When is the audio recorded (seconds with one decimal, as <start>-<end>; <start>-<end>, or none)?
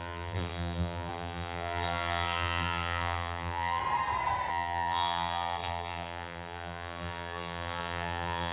3.8-4.5